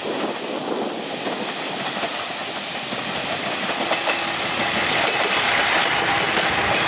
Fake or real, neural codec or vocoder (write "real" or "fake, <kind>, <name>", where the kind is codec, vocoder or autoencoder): real